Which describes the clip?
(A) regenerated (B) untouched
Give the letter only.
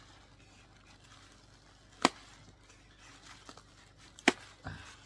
B